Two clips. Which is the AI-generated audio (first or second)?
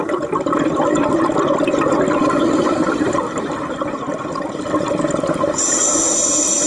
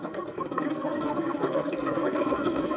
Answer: second